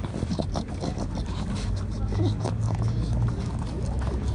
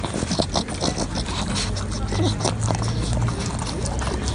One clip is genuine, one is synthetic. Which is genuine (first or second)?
second